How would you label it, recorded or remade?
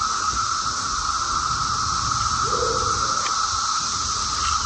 recorded